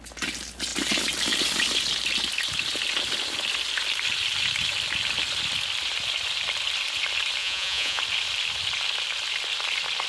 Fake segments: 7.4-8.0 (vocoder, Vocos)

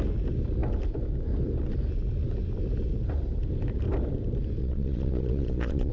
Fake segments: 4.6-5.9 (vocoder, Vocos)